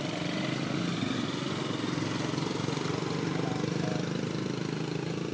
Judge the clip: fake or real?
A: real